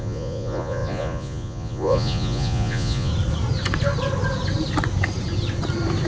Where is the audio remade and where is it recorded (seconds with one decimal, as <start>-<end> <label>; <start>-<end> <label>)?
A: 0.0-3.1 remade; 3.1-6.1 recorded